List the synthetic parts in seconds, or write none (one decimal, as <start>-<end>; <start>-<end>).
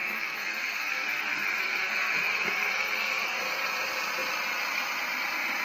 0.0-3.4